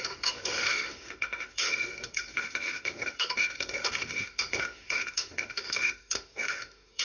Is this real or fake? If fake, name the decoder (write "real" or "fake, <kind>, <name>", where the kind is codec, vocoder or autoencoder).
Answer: fake, autoencoder, DAC-VAE